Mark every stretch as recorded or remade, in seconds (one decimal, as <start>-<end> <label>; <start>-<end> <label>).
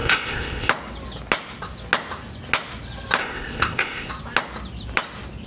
0.0-0.7 remade; 0.7-3.2 recorded; 3.2-4.1 remade; 4.1-5.5 recorded